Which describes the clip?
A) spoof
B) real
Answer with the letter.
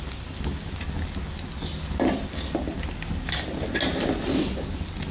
B